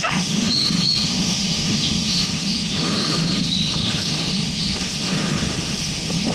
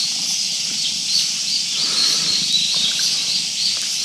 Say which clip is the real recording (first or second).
second